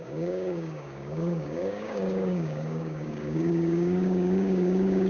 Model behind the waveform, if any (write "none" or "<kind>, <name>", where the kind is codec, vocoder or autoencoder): codec, DAC